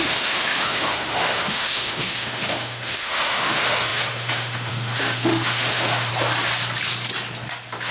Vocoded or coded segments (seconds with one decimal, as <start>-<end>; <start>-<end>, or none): 0.0-6.1